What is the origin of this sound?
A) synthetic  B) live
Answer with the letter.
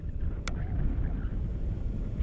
B